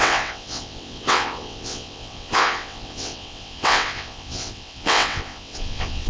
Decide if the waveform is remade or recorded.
remade